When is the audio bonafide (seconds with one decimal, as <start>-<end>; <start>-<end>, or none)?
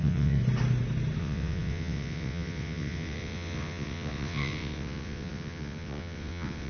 0.4-1.2